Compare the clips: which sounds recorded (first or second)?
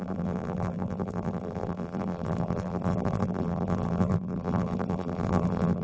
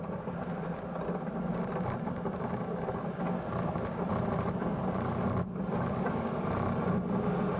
second